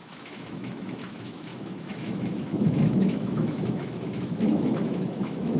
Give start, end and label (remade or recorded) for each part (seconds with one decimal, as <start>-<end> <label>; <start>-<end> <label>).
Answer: 0.0-5.6 remade